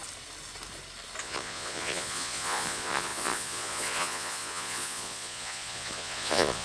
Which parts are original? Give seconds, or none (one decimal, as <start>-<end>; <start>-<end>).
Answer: 0.0-1.2